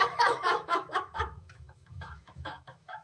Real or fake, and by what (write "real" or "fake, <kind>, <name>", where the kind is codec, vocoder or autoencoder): fake, autoencoder, DAC-VAE